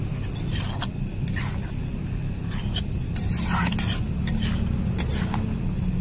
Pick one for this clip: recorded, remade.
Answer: recorded